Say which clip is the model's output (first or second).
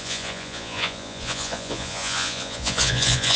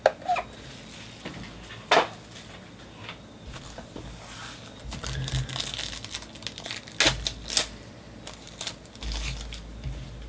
first